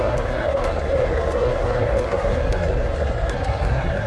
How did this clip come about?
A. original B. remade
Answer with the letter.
B